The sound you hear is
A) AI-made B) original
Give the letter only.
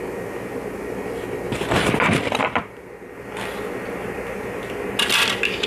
B